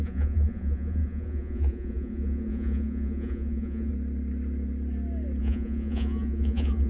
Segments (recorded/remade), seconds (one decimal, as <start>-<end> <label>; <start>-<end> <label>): 0.0-3.9 remade; 3.9-5.4 recorded; 5.4-6.9 remade